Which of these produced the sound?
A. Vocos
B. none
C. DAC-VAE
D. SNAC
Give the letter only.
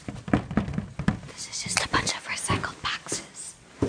B